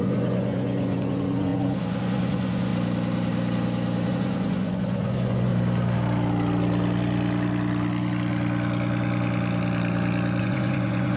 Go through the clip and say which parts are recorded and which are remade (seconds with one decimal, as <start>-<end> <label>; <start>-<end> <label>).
0.0-2.7 remade; 2.7-4.1 recorded; 4.1-5.5 remade; 5.5-10.4 recorded; 10.4-11.2 remade